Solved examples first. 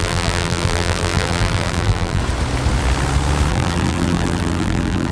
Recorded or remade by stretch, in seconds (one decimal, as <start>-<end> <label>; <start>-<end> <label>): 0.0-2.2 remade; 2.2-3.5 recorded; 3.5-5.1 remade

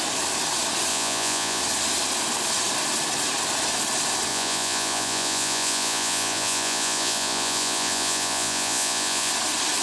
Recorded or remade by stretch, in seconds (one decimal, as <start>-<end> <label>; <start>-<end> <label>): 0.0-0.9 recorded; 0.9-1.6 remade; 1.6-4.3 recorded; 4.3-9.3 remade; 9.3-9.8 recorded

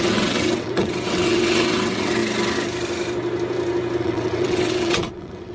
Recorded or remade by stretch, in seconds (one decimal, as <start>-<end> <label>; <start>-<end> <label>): 0.0-2.2 remade; 2.2-4.0 recorded; 4.0-5.5 remade